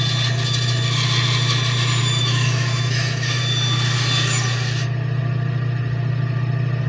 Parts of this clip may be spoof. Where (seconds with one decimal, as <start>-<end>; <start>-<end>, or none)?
2.0-3.4